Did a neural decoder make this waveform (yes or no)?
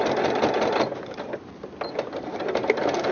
no